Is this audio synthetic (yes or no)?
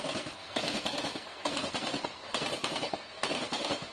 yes